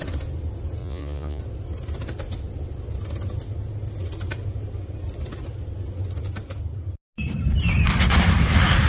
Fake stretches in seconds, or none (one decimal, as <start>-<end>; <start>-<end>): 0.8-1.4